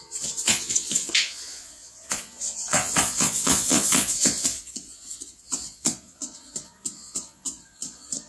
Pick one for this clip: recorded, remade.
remade